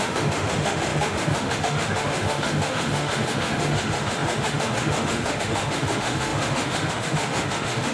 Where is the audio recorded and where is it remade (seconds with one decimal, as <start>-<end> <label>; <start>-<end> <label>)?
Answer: 0.0-7.9 remade